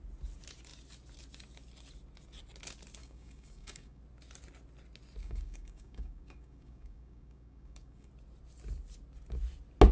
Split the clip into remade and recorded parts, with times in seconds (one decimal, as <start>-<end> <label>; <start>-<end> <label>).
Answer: 0.0-3.0 recorded; 3.0-4.0 remade; 4.0-5.2 recorded; 5.2-8.1 remade; 8.1-9.9 recorded